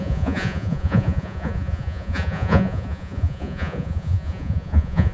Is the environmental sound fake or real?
fake